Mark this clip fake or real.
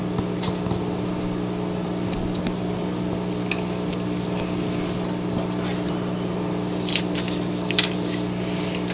real